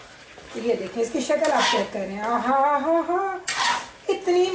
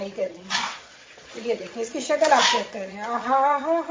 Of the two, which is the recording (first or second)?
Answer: first